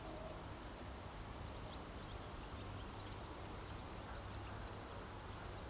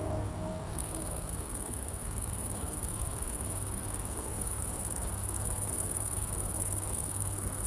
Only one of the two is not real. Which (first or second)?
second